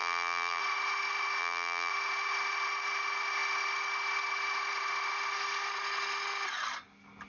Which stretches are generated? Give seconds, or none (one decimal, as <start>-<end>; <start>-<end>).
0.0-0.6; 1.4-1.9